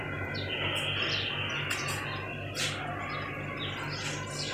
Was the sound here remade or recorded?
recorded